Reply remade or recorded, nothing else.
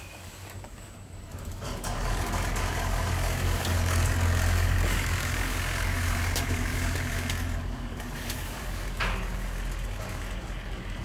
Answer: remade